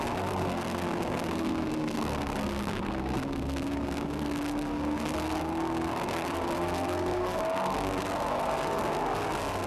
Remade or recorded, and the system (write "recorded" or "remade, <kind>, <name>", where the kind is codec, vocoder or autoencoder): remade, codec, SNAC